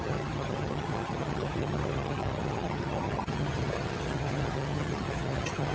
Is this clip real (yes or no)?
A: no